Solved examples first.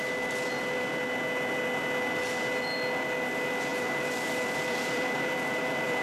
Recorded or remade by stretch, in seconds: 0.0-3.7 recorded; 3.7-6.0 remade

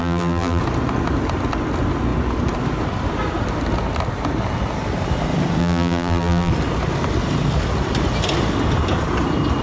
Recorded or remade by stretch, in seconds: 0.0-0.6 remade; 0.6-5.6 recorded; 5.6-6.5 remade; 6.5-9.6 recorded

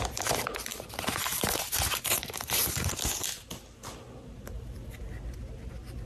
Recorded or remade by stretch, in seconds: 0.0-0.7 recorded; 0.7-2.9 remade; 2.9-6.1 recorded